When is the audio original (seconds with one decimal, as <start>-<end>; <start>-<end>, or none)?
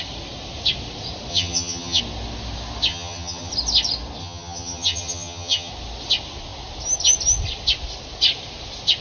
0.0-1.3; 2.0-2.9; 3.5-4.2; 5.7-9.0